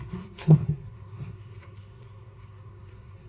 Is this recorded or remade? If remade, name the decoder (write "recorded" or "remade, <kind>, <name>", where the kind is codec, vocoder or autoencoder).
remade, codec, SNAC